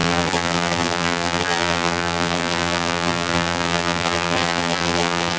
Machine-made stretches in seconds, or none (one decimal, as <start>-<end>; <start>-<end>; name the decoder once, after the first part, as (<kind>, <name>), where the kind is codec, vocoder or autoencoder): 0.0-5.4 (vocoder, BigVGAN v2)